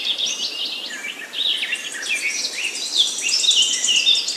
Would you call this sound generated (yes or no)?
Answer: no